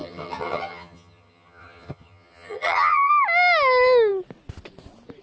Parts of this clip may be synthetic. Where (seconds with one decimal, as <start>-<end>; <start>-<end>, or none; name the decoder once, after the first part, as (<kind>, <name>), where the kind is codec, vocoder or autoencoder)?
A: 0.0-3.1 (vocoder, HiFi-GAN)